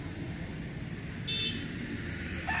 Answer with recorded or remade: recorded